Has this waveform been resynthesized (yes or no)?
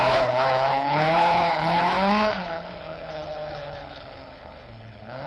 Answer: yes